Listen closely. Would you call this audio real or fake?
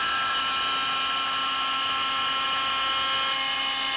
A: real